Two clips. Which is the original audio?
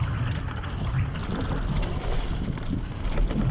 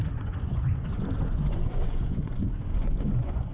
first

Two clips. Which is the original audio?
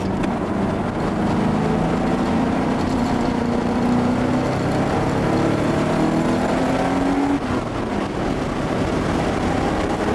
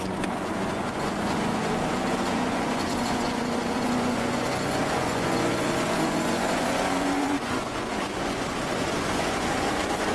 first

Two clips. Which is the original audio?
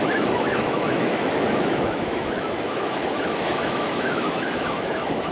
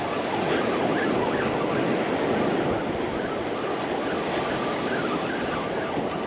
second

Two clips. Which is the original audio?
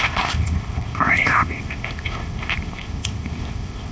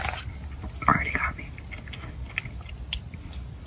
second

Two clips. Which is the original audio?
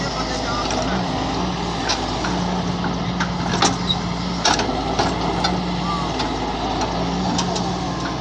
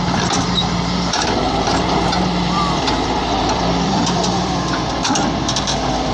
first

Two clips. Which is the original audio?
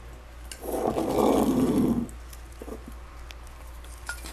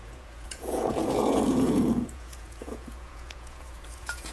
first